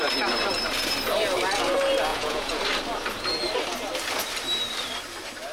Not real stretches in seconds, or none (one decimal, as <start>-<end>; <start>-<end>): 2.1-2.6

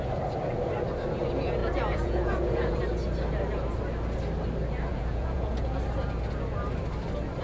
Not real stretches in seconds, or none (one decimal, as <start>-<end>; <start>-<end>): 1.6-2.8; 4.9-5.8

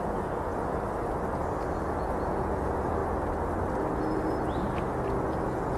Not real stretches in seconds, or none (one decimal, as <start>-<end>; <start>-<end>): 0.0-0.5; 1.9-3.0; 5.2-5.8

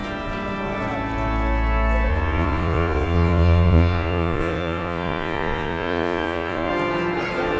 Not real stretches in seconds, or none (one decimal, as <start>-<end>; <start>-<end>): 2.1-6.7

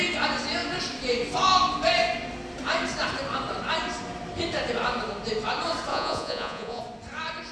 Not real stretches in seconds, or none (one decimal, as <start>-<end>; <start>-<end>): 5.9-6.8

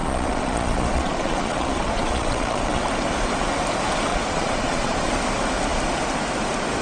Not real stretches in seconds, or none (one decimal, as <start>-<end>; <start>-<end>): 0.0-2.8; 4.1-5.1

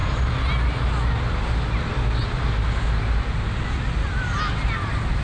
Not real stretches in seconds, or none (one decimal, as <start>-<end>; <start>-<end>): none

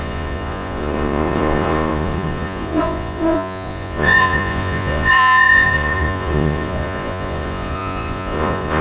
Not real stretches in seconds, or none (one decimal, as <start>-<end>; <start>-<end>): 0.0-8.8